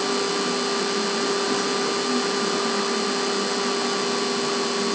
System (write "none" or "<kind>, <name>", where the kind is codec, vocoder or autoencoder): none